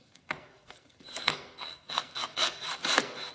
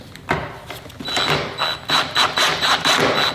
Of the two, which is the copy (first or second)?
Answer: first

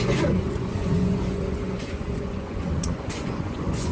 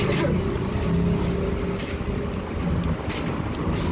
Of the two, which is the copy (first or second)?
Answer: first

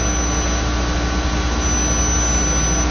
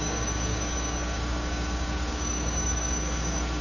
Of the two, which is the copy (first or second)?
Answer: second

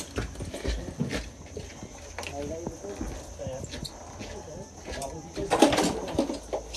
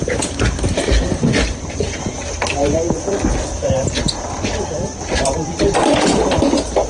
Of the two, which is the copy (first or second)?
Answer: second